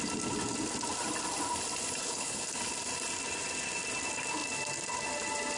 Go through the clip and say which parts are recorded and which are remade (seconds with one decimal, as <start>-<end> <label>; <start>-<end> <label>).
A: 0.0-2.0 recorded; 2.0-2.6 remade; 2.6-5.6 recorded